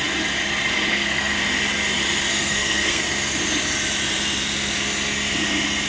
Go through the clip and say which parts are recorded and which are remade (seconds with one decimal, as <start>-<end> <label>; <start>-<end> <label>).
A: 0.0-0.9 recorded; 0.9-1.4 remade; 1.4-2.3 recorded; 2.3-3.0 remade; 3.0-5.9 recorded